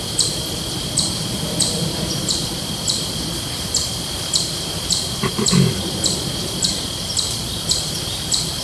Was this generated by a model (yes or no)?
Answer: no